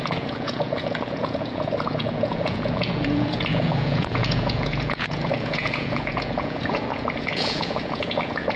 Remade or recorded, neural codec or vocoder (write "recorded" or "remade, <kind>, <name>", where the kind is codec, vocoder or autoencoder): remade, vocoder, Vocos